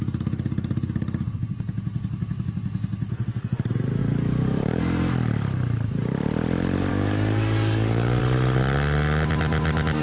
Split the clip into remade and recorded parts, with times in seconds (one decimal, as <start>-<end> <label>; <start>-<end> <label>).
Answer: 0.0-4.0 recorded; 4.0-4.8 remade; 4.8-6.9 recorded; 6.9-8.2 remade; 8.2-10.0 recorded